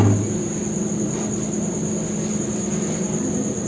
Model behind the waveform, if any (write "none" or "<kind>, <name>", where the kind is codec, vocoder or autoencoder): none